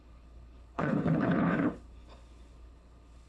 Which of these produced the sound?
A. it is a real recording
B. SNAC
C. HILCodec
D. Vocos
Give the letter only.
C